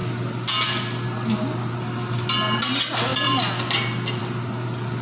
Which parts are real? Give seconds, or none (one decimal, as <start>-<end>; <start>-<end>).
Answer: 0.0-5.0